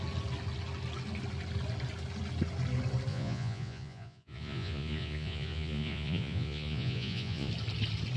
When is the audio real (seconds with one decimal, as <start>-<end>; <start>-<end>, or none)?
0.0-3.1; 7.5-8.2